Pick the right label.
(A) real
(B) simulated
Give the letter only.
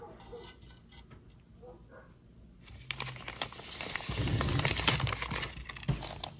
A